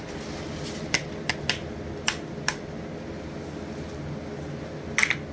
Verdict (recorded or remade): recorded